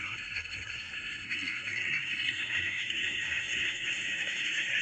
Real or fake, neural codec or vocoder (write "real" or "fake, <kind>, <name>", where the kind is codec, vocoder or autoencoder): fake, codec, SNAC